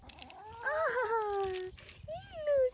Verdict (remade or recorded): recorded